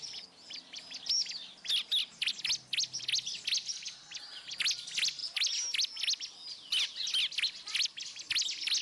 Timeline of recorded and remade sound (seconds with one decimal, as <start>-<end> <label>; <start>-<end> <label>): 0.0-8.8 recorded